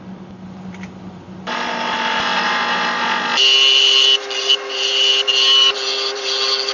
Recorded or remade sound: recorded